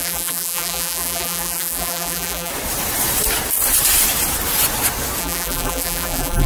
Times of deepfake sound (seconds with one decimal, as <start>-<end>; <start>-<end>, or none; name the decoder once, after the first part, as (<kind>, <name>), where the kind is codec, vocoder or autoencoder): 0.0-2.5 (vocoder, BigVGAN v2); 5.2-6.5